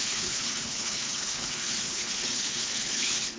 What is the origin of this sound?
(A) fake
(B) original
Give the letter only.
A